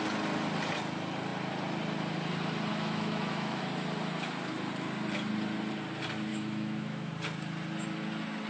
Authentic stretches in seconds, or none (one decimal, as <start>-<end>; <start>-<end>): 0.0-2.7; 3.6-6.3; 7.1-8.5